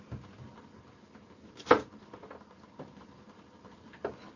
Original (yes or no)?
yes